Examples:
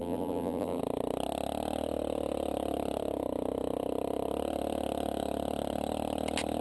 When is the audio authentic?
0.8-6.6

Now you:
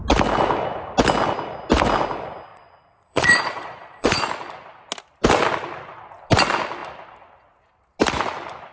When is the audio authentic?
0.0-2.5; 4.2-8.7

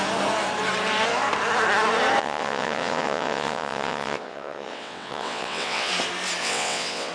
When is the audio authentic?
0.0-2.2; 5.9-6.4

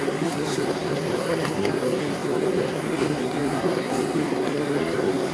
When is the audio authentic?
none

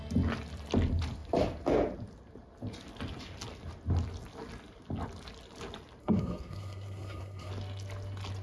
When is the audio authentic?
0.0-6.0; 7.5-8.4

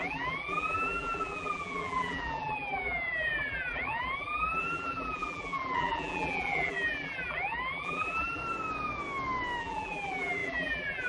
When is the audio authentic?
8.4-9.6

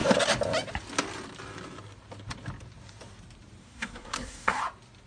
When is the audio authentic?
0.0-3.6; 4.6-5.1

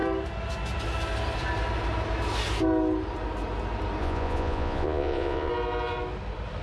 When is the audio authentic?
0.0-4.0; 5.5-6.6